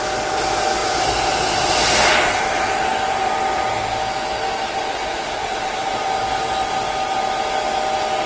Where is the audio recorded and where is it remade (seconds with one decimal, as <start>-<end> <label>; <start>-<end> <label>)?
0.0-0.8 recorded; 0.8-2.4 remade; 2.4-2.9 recorded; 2.9-3.7 remade; 3.7-5.4 recorded; 5.4-6.0 remade; 6.0-8.3 recorded